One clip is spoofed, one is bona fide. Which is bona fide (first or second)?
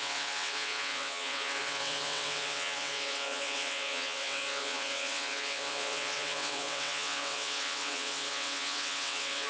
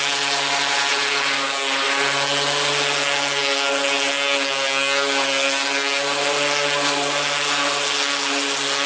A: second